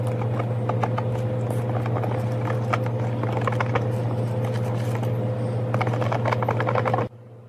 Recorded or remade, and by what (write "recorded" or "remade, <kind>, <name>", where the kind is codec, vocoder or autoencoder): recorded